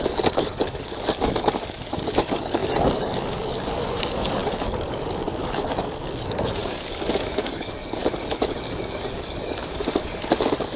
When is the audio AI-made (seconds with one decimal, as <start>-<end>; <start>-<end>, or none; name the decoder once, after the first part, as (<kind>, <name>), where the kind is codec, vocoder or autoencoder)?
0.0-10.8 (codec, DAC)